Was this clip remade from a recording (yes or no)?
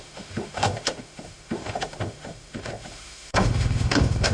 yes